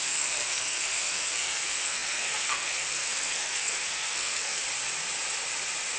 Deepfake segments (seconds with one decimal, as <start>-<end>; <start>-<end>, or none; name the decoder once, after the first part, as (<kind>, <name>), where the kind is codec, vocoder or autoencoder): 0.0-4.6 (codec, SNAC)